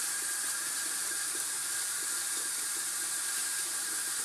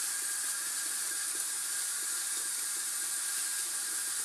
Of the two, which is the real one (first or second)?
second